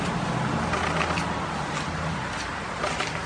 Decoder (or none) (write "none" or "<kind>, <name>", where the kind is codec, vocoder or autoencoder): none